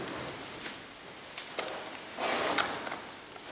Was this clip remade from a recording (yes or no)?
no